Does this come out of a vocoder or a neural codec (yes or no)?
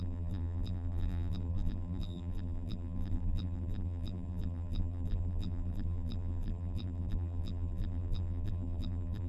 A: yes